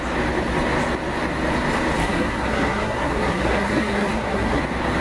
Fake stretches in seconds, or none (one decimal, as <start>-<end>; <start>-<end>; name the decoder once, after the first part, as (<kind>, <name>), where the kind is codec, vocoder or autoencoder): 2.0-4.6 (codec, SNAC)